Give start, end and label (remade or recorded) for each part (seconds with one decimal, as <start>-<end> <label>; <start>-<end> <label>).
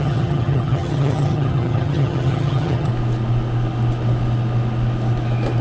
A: 0.0-2.9 remade; 2.9-5.6 recorded